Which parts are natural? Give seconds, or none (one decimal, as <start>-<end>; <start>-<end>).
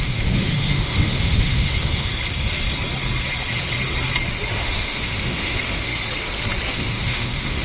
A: 2.1-4.5; 5.9-6.7